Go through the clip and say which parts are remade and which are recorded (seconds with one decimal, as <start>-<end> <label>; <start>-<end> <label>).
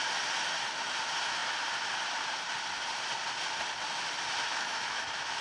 0.0-4.5 recorded; 4.5-5.4 remade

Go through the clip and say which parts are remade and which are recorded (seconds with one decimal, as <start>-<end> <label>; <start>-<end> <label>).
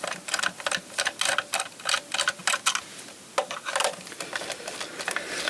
0.0-5.5 recorded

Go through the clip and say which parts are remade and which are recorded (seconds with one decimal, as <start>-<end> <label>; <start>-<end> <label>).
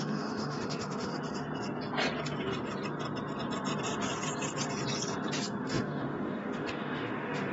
0.0-1.1 remade; 1.1-5.6 recorded; 5.6-7.5 remade